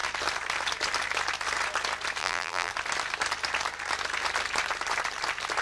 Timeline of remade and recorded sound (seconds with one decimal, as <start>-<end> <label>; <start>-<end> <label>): 0.0-2.2 recorded; 2.2-2.7 remade; 2.7-5.6 recorded